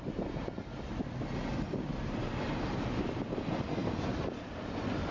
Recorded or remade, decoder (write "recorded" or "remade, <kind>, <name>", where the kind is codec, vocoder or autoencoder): recorded